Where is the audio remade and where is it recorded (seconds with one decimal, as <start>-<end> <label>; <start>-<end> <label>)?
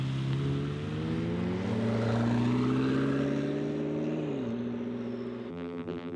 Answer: 0.0-5.5 recorded; 5.5-6.2 remade